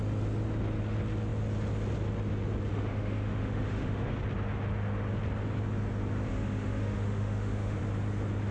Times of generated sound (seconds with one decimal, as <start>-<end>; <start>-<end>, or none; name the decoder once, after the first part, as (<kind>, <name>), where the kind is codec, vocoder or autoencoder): 2.7-4.1 (autoencoder, DAC-VAE); 6.3-7.8